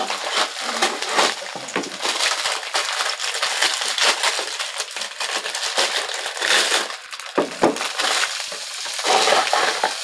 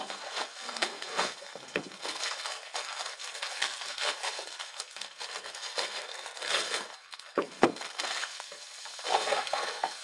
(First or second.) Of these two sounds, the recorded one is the first